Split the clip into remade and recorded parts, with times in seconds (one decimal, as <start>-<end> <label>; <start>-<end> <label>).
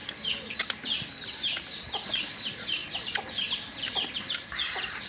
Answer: 0.0-2.8 recorded; 2.8-4.4 remade; 4.4-5.1 recorded